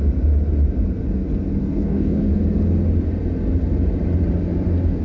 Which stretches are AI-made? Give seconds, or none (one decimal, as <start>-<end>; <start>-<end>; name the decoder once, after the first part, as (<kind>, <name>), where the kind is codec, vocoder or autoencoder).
1.6-2.3 (codec, DAC)